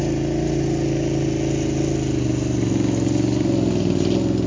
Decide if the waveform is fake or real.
real